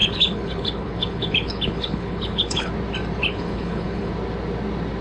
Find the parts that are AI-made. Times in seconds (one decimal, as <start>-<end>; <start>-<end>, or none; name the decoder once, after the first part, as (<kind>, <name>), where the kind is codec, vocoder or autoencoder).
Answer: 0.0-2.7 (codec, HILCodec); 3.2-4.1